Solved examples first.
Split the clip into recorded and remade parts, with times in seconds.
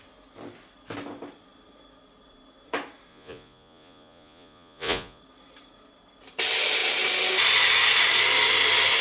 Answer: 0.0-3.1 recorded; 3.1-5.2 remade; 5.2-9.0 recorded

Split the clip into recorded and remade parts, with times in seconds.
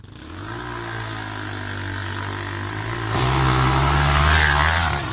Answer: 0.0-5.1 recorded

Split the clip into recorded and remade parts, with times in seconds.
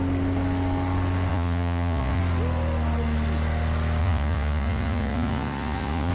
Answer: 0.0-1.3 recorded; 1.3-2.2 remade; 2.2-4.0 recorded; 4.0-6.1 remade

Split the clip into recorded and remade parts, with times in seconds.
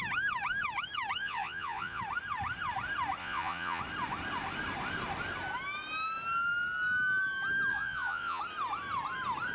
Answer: 0.0-1.2 recorded; 1.2-2.0 remade; 2.0-3.2 recorded; 3.2-3.8 remade; 3.8-7.7 recorded; 7.7-8.4 remade; 8.4-9.5 recorded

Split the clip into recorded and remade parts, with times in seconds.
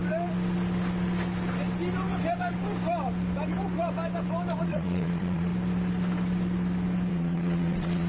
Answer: 0.0-4.6 recorded; 4.6-5.5 remade; 5.5-7.1 recorded; 7.1-8.1 remade